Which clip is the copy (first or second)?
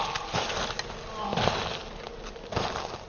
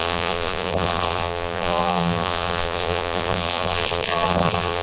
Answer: second